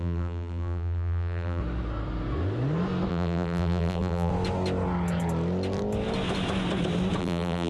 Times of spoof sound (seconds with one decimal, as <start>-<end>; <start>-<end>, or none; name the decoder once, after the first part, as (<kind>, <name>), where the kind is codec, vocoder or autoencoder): 0.0-1.6 (vocoder, BigVGAN v2); 3.1-4.3; 7.2-7.7